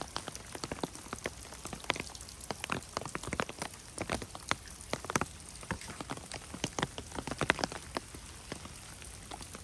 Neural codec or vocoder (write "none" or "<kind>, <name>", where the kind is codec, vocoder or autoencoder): none